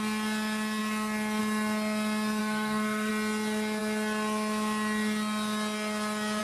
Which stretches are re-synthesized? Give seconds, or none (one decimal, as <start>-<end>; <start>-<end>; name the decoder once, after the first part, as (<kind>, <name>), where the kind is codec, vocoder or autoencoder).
2.4-3.1 (codec, SNAC)